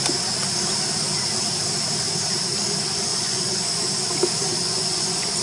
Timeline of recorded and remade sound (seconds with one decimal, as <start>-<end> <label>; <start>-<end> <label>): 0.0-3.1 recorded; 3.1-3.9 remade; 3.9-4.6 recorded; 4.6-5.4 remade